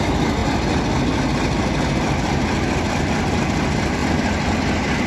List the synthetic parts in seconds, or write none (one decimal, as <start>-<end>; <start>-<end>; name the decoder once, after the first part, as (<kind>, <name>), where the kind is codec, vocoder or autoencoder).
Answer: 4.0-4.6 (vocoder, BigVGAN v2)